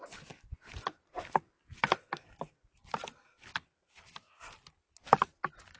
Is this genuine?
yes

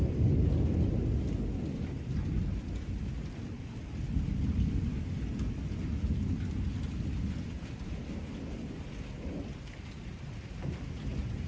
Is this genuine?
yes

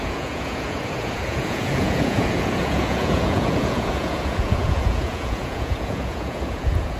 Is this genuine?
no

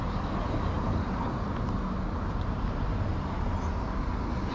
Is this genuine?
yes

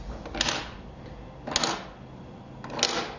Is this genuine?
yes